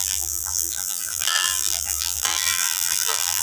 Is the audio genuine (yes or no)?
no